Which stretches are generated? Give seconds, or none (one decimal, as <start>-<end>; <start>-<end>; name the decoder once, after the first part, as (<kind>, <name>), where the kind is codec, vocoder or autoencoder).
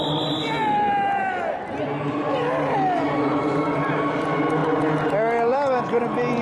none